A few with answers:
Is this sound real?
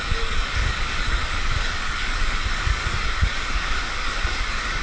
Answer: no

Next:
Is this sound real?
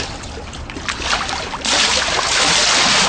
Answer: yes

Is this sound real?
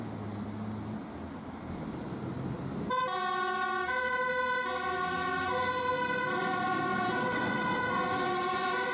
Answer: yes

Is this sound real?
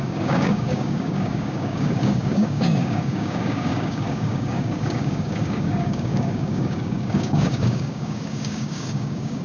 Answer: no